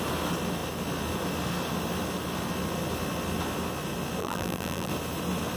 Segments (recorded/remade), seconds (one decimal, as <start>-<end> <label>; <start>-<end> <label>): 0.0-4.2 recorded; 4.2-4.9 remade; 4.9-5.6 recorded